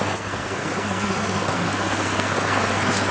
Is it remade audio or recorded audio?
remade